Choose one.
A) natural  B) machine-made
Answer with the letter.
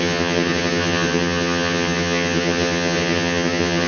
B